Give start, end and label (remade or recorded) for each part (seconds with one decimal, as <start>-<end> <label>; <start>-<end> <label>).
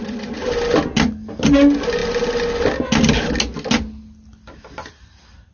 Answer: 0.0-5.5 recorded